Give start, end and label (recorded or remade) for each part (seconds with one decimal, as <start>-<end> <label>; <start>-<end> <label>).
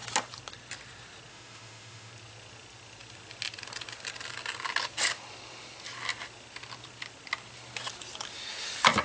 0.0-1.3 recorded; 1.3-2.1 remade; 2.1-9.0 recorded